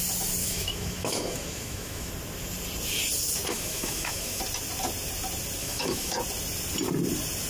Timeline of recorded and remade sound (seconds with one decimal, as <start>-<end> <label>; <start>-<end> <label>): 0.0-0.4 recorded; 0.4-2.1 remade; 2.1-3.5 recorded; 3.5-4.4 remade; 4.4-5.6 recorded; 5.6-6.1 remade; 6.1-7.5 recorded

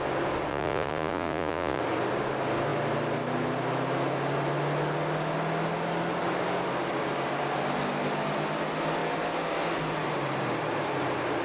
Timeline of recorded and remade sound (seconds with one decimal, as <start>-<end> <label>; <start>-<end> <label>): 0.0-0.5 recorded; 0.5-1.8 remade; 1.8-11.4 recorded

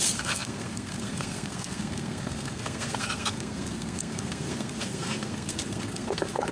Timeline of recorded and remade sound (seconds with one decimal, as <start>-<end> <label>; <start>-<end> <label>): 0.0-6.5 remade

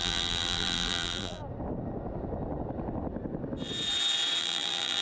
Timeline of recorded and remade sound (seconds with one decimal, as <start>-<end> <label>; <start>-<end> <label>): 0.0-1.4 remade; 1.4-4.4 recorded; 4.4-5.0 remade

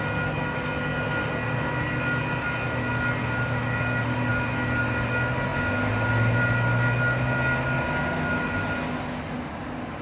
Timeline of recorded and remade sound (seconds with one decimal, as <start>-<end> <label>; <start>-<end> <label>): 0.0-3.2 recorded; 3.2-3.8 remade; 3.8-10.0 recorded

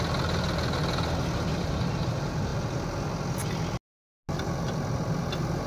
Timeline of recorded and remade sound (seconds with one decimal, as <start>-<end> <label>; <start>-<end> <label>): 0.0-5.7 recorded

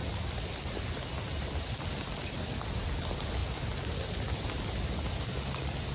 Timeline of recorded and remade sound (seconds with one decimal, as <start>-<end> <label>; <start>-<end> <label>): 0.0-5.9 recorded